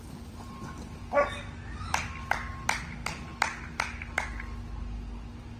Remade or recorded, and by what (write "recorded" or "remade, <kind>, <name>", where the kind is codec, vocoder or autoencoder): recorded